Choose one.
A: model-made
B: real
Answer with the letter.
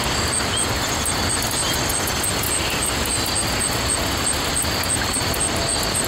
B